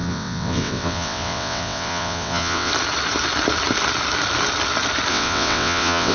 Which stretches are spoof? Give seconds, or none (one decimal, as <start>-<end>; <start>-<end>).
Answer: 0.0-2.7; 5.1-6.1